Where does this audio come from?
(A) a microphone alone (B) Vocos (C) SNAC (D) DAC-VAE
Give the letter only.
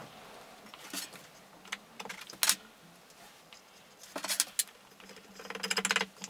A